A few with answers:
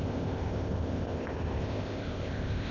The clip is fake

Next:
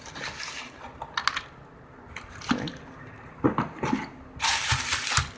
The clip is real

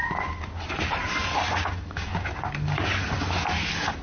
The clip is real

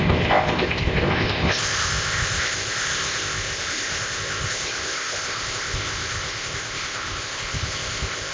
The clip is fake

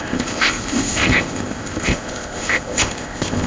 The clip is fake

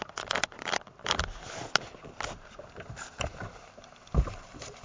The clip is real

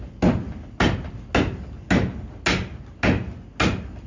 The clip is real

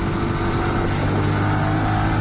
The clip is real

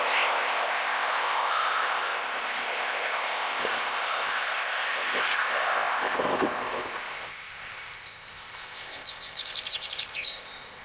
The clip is fake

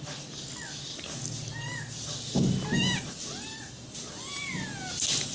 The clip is real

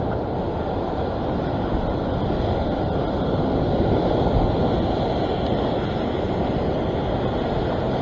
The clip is real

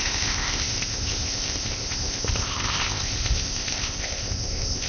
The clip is fake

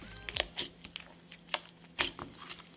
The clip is real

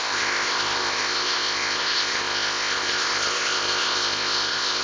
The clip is fake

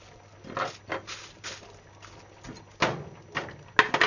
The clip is real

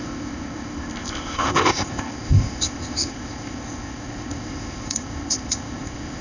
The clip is fake